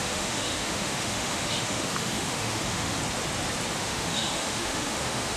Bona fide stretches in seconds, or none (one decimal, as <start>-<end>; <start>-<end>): 3.0-3.8